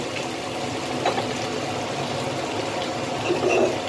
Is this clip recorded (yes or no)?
yes